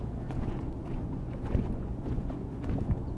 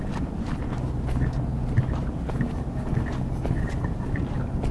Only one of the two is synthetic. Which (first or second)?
first